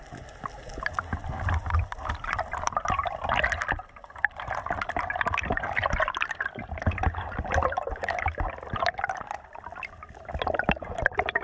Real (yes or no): yes